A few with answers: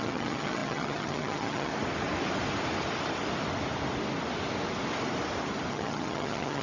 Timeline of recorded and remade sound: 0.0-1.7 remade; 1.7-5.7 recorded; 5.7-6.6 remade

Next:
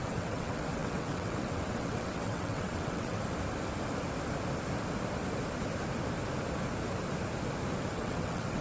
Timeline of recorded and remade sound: 0.0-3.2 remade; 3.2-7.9 recorded; 7.9-8.6 remade

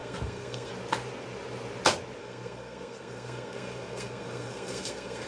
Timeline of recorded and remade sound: 0.0-0.7 remade; 0.7-2.2 recorded; 2.2-5.3 remade

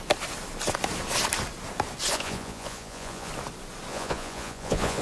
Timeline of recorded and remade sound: 0.0-2.1 recorded; 2.1-3.3 remade; 3.3-3.9 recorded; 3.9-5.0 remade

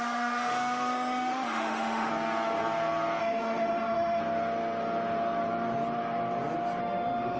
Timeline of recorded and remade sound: 0.0-2.1 remade; 2.1-3.2 recorded; 3.2-4.2 remade; 4.2-6.8 recorded; 6.8-7.4 remade

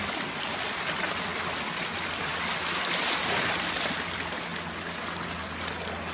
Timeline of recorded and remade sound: 0.0-6.1 recorded

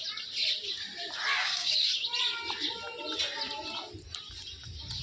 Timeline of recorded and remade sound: 0.0-1.4 recorded; 1.4-1.9 remade; 1.9-5.0 recorded

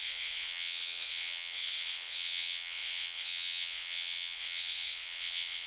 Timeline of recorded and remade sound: 0.0-5.7 remade